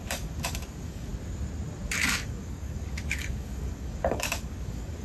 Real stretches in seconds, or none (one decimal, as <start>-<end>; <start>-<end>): 1.1-2.0

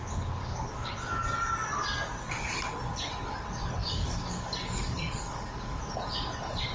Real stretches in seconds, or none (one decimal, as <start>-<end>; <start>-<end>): 0.0-0.4; 0.9-3.8; 5.8-6.7

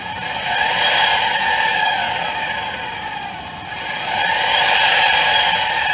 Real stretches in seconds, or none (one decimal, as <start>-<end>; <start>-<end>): 0.0-1.7; 2.2-5.9

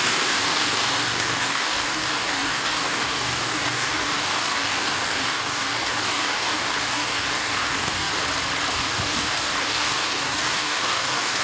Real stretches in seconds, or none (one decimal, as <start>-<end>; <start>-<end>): 8.1-8.7